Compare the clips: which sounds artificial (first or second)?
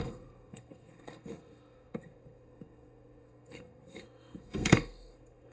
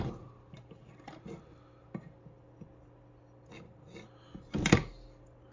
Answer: first